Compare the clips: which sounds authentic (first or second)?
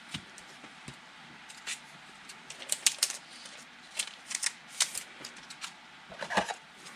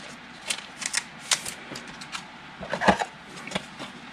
second